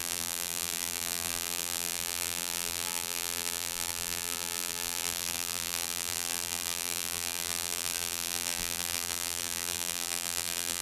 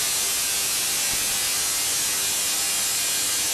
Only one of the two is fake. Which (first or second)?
first